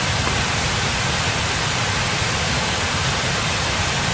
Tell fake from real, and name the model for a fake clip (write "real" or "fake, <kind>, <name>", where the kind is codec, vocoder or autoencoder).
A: real